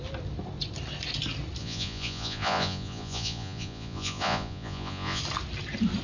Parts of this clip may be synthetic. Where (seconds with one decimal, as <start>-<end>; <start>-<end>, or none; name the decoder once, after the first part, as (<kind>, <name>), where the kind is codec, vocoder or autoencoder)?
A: 1.6-5.2 (vocoder, Vocos)